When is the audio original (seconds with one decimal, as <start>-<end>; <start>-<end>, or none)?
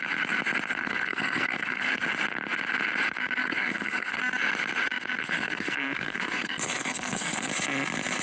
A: 0.0-0.8; 1.9-3.4; 4.2-5.2; 7.5-8.2